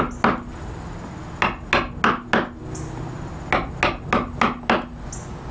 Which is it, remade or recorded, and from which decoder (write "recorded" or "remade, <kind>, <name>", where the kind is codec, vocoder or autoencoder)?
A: recorded